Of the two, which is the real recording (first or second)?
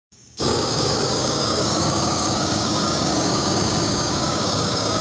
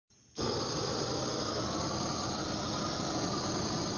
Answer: second